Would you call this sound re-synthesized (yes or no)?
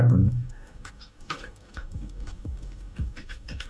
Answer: yes